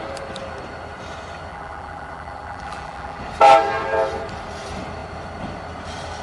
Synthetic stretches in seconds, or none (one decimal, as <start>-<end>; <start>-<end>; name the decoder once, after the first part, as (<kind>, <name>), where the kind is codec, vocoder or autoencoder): 1.5-3.2 (vocoder, BigVGAN v2)